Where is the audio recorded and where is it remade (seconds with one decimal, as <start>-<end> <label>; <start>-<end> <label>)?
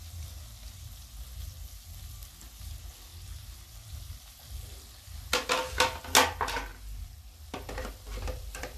0.0-3.1 recorded; 3.1-4.9 remade; 4.9-6.7 recorded; 6.7-8.8 remade